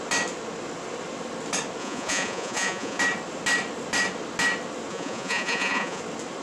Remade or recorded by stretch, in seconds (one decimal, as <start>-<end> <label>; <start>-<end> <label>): 0.0-1.8 recorded; 1.8-3.0 remade; 3.0-4.9 recorded; 4.9-6.0 remade; 6.0-6.4 recorded